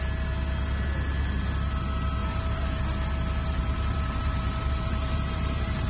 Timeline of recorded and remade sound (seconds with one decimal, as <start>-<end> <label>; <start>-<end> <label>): 0.0-2.2 recorded; 2.2-2.8 remade; 2.8-3.4 recorded; 3.4-5.9 remade